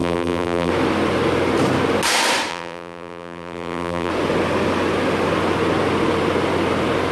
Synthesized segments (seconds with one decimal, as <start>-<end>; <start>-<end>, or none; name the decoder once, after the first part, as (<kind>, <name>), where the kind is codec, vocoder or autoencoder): 0.0-0.7 (vocoder, BigVGAN v2); 2.5-4.1